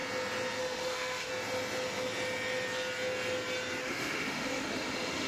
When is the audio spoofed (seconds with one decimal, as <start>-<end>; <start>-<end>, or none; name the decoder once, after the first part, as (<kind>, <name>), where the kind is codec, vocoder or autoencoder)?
0.6-1.3 (autoencoder, DAC-VAE); 3.8-5.3